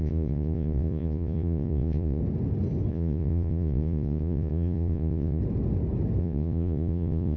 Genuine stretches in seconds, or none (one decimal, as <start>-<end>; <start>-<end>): 2.2-2.9; 5.4-6.2